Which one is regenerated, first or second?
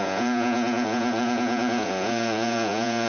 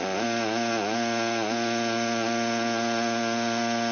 first